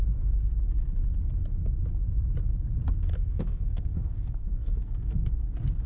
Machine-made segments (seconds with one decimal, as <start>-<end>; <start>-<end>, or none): 3.1-5.4